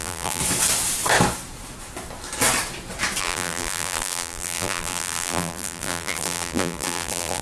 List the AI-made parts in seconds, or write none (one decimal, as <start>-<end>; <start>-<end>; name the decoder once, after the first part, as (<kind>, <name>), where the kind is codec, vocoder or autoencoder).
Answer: 0.0-0.4 (vocoder, BigVGAN v2); 3.2-7.4